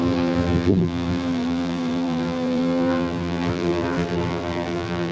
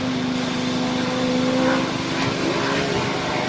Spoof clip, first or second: first